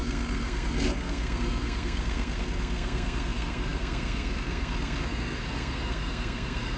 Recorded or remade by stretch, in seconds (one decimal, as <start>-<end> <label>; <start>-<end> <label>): 0.0-6.8 remade